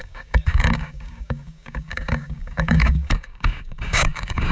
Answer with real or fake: fake